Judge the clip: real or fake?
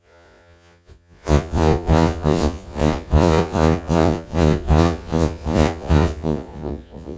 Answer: fake